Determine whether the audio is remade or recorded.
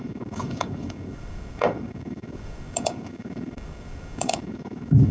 remade